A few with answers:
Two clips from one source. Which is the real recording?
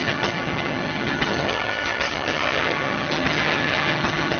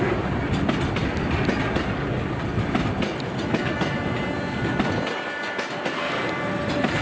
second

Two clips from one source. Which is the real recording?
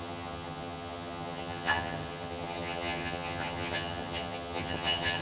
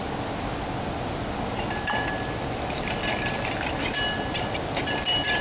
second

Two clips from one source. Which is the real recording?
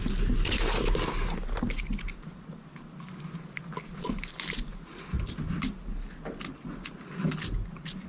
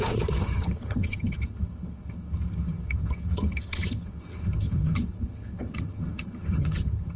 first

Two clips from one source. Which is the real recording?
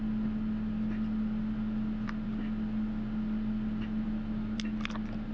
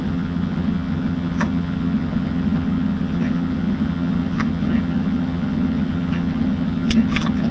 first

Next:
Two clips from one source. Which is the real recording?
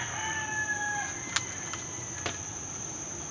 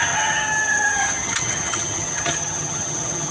first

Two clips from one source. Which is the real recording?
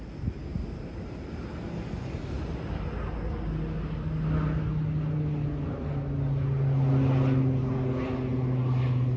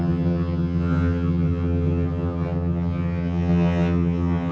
first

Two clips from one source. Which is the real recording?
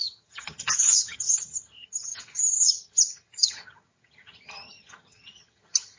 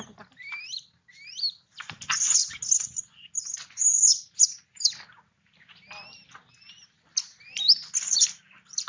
second